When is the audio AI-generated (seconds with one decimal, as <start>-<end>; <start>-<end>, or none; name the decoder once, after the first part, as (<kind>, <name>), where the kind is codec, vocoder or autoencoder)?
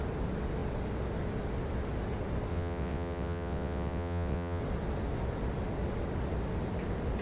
2.5-4.6 (vocoder, WaveNeXt)